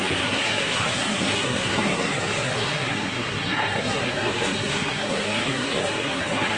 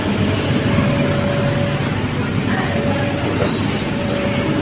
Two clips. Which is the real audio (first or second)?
second